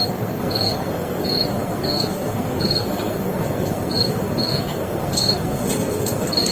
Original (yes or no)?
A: no